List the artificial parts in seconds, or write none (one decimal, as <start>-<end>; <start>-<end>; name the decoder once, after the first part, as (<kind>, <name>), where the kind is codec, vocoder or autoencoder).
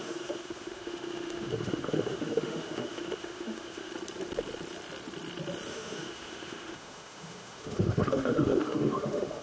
0.0-3.9 (autoencoder, DAC-VAE); 5.7-9.4